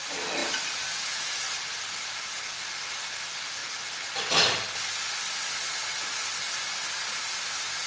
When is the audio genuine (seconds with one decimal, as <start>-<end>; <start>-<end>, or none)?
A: 0.0-7.9